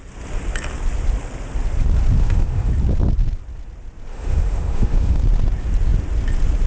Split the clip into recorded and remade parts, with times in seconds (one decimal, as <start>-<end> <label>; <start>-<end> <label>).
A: 0.0-2.2 recorded; 2.2-2.7 remade; 2.7-4.1 recorded; 4.1-5.2 remade; 5.2-6.7 recorded